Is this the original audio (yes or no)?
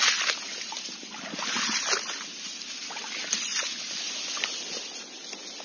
yes